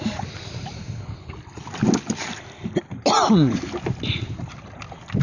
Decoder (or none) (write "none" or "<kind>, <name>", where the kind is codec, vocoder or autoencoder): none